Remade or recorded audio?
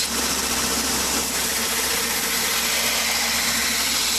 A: recorded